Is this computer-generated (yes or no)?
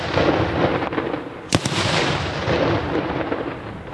no